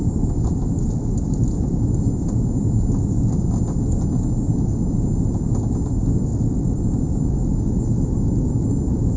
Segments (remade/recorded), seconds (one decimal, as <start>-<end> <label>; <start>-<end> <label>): 0.0-6.3 recorded; 6.3-6.8 remade; 6.8-9.2 recorded